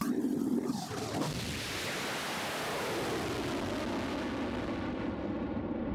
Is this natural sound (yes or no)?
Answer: yes